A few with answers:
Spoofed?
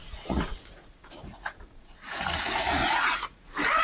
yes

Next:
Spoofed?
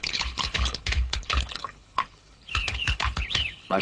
yes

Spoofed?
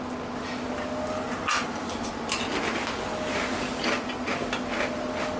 no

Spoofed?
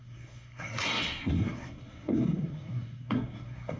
yes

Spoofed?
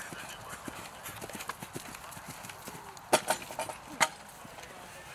no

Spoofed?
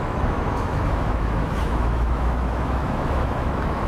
yes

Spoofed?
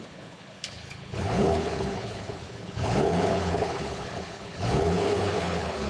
yes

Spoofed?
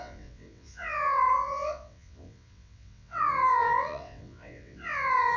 yes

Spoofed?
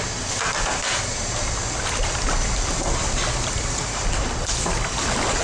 no